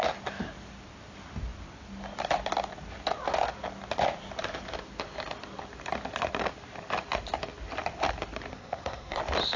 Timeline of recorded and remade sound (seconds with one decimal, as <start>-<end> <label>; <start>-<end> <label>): 0.0-8.5 recorded; 8.5-9.2 remade; 9.2-9.6 recorded